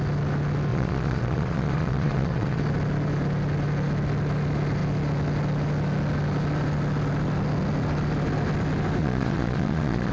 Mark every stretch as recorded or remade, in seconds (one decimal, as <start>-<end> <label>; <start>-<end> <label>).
0.0-0.7 recorded; 0.7-2.6 remade; 2.6-9.0 recorded; 9.0-10.1 remade